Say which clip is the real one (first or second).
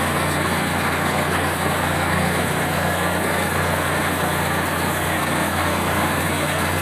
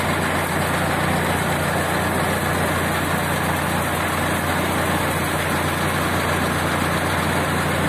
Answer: second